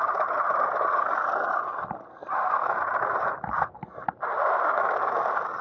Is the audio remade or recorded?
recorded